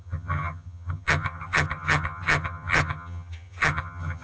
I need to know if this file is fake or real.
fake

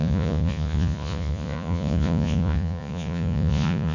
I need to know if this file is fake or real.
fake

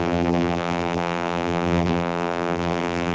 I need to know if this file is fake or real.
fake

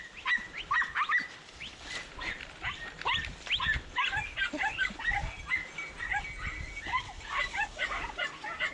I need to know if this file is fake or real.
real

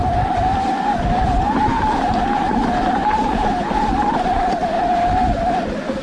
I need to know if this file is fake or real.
real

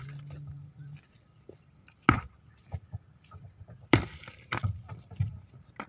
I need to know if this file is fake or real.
fake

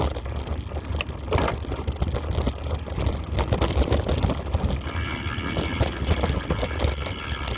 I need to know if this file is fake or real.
real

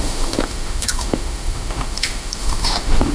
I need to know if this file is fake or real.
fake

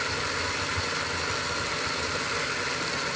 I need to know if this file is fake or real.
real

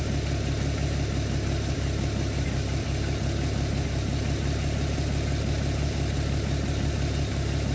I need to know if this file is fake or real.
real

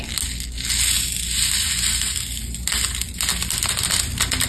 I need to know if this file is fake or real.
real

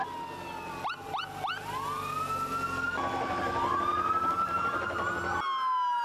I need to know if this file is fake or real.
real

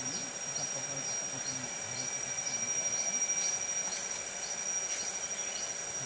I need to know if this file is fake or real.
real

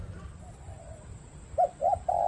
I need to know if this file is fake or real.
real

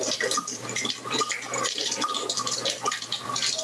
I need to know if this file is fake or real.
fake